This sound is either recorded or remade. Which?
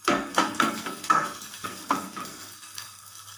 remade